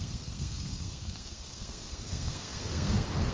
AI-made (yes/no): yes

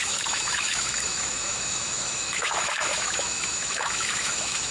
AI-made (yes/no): yes